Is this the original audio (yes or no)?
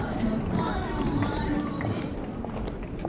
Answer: no